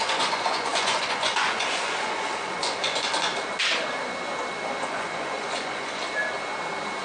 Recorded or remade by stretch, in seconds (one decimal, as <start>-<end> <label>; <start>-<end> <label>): 0.0-3.3 remade; 3.3-4.8 recorded; 4.8-6.0 remade; 6.0-7.0 recorded